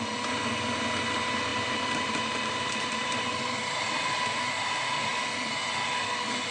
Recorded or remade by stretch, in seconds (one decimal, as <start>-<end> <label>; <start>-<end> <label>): 0.0-1.5 recorded; 1.5-4.5 remade; 4.5-6.5 recorded